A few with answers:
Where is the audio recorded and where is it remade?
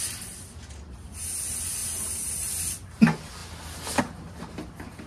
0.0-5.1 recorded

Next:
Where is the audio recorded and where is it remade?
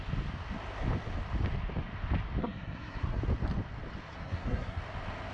0.0-2.4 recorded; 2.4-3.2 remade; 3.2-4.1 recorded; 4.1-4.8 remade; 4.8-5.3 recorded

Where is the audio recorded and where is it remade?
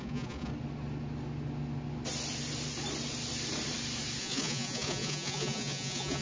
0.0-0.5 remade; 0.5-4.2 recorded; 4.2-6.2 remade